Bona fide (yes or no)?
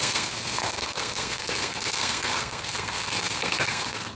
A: no